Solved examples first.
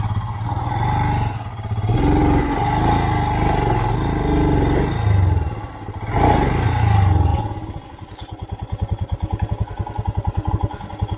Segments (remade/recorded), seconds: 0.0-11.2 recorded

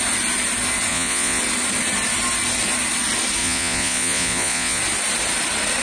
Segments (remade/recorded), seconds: 0.0-0.9 recorded; 0.9-1.4 remade; 1.4-3.4 recorded; 3.4-4.8 remade; 4.8-5.8 recorded

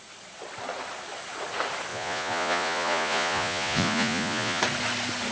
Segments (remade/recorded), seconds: 0.0-1.9 recorded; 1.9-4.6 remade; 4.6-5.3 recorded